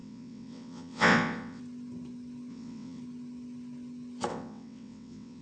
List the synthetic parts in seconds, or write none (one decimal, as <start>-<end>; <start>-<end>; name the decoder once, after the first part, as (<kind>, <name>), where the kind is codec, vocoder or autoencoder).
0.0-1.6 (vocoder, WaveNeXt); 2.5-3.0; 4.3-5.4